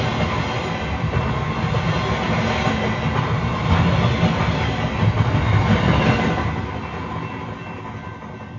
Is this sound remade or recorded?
recorded